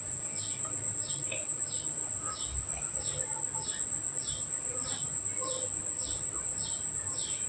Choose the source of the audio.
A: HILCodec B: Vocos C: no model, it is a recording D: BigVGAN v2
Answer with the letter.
C